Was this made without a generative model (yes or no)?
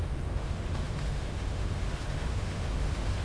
no